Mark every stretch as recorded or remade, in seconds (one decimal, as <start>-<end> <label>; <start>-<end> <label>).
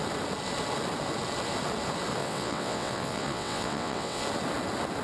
0.0-2.2 recorded; 2.2-4.2 remade; 4.2-5.0 recorded